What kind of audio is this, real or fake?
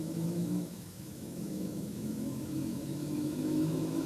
fake